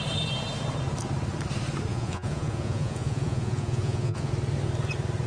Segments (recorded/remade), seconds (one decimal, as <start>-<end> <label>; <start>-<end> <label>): 0.0-1.9 recorded; 1.9-4.3 remade; 4.3-5.3 recorded